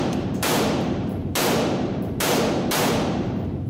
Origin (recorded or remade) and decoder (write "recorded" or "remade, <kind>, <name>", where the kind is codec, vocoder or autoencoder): remade, vocoder, BigVGAN v2